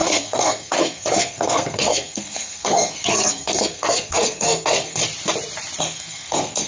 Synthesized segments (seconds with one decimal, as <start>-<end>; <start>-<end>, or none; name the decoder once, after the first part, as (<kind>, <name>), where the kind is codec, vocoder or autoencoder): 0.0-5.0 (codec, SNAC); 5.8-6.7